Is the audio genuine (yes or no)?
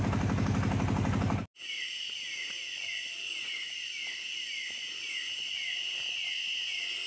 yes